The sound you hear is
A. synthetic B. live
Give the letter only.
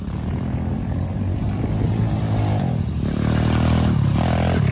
B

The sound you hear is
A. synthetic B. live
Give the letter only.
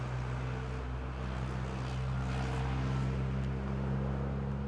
B